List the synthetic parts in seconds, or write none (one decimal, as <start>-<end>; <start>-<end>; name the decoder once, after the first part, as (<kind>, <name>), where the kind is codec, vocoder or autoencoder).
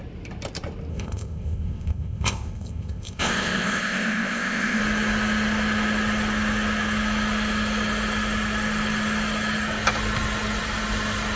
0.9-4.8 (codec, ZipCodec)